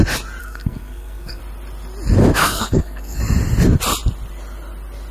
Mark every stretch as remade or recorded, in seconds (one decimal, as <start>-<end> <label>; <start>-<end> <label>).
0.0-0.4 recorded; 0.4-1.4 remade; 1.4-2.4 recorded; 2.4-3.2 remade; 3.2-5.1 recorded